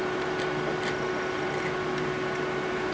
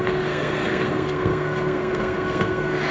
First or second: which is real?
first